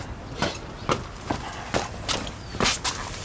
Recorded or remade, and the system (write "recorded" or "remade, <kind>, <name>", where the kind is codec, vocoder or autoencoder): recorded